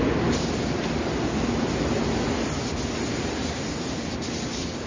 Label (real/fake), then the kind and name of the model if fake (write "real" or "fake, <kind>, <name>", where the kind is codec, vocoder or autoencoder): real